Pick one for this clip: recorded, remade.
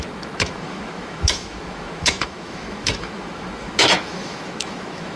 remade